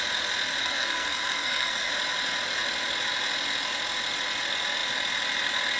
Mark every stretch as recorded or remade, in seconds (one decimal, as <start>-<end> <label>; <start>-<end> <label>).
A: 0.0-0.6 recorded; 0.6-1.9 remade; 1.9-5.8 recorded

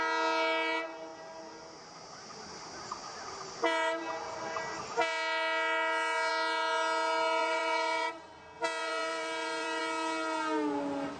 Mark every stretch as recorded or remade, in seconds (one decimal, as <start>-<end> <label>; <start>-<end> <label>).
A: 0.0-7.4 recorded; 7.4-8.1 remade; 8.1-8.8 recorded; 8.8-9.8 remade; 9.8-11.2 recorded

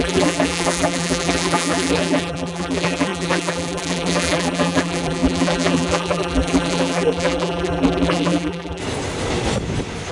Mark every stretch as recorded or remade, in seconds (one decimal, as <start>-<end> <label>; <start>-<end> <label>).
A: 0.0-8.8 remade; 8.8-10.1 recorded

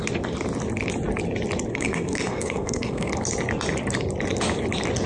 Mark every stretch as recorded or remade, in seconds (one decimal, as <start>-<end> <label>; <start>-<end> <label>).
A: 0.0-1.7 recorded; 1.7-3.1 remade; 3.1-5.1 recorded

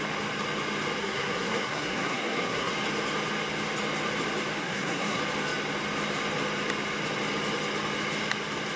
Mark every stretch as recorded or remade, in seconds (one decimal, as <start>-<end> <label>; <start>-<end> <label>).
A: 0.0-1.0 recorded; 1.0-2.7 remade; 2.7-4.6 recorded; 4.6-5.2 remade; 5.2-8.8 recorded